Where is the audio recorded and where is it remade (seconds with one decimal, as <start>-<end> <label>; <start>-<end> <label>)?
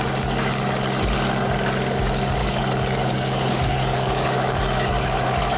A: 0.0-2.4 recorded; 2.4-5.6 remade